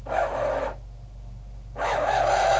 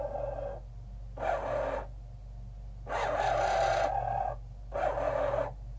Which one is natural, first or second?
second